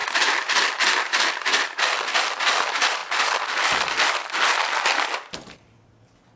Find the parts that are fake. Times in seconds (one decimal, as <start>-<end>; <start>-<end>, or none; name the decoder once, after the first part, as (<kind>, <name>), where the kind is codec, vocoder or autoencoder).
none